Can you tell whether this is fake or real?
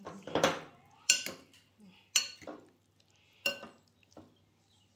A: real